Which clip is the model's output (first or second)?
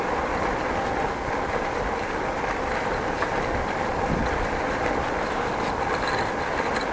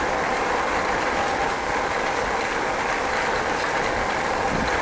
first